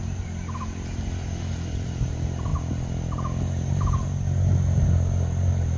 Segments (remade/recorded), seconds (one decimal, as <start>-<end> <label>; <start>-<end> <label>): 0.0-2.5 remade; 2.5-5.8 recorded